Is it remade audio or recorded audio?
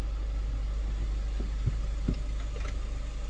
recorded